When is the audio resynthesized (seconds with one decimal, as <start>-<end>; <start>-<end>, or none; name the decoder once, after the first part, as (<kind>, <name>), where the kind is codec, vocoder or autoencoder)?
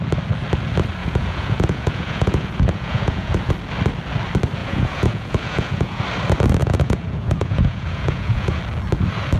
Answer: 1.0-3.5 (vocoder, Vocos); 4.6-6.0; 6.6-8.6